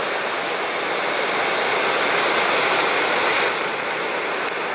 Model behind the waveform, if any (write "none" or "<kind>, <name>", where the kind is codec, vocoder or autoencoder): none